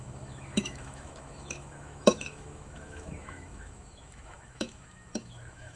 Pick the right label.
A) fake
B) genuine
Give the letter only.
A